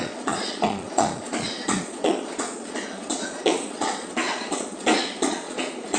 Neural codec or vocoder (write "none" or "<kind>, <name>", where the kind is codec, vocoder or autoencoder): vocoder, Vocos